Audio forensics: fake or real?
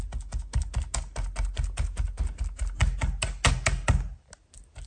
real